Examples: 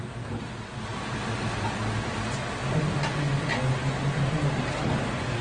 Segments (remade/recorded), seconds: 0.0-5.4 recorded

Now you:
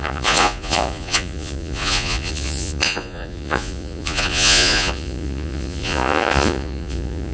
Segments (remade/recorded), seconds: 0.0-7.3 remade

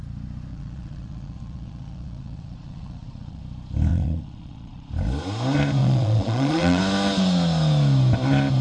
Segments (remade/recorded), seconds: 0.0-0.5 recorded; 0.5-3.4 remade; 3.4-3.9 recorded; 3.9-4.9 remade; 4.9-5.8 recorded; 5.8-6.8 remade; 6.8-8.6 recorded

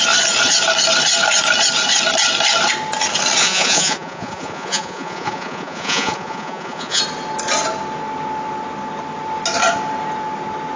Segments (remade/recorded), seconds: 0.0-3.4 recorded; 3.4-7.0 remade; 7.0-10.8 recorded